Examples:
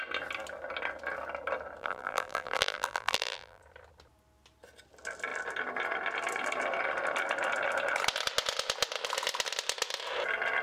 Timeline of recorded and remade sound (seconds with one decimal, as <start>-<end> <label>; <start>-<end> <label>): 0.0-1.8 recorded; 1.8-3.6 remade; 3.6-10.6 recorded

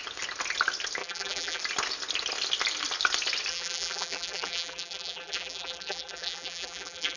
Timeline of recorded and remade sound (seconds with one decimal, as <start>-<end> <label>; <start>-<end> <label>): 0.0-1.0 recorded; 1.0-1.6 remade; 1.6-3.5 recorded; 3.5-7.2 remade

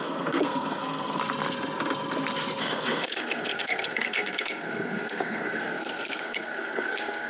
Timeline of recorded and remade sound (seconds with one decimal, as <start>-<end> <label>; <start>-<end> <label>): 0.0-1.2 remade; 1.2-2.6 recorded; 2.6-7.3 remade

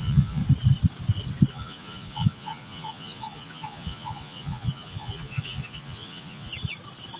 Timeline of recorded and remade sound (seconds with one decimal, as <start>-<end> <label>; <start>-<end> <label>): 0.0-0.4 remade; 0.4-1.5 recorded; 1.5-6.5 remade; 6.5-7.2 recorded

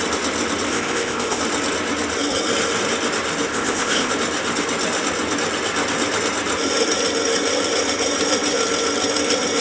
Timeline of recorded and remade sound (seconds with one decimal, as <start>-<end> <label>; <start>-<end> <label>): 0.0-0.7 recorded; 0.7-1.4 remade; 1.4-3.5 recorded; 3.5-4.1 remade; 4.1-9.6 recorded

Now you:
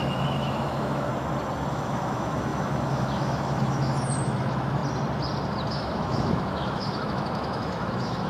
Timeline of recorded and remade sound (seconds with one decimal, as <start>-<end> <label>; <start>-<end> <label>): 0.0-1.1 remade; 1.1-1.7 recorded; 1.7-4.8 remade; 4.8-5.7 recorded; 5.7-8.3 remade